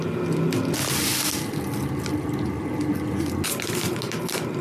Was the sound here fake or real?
real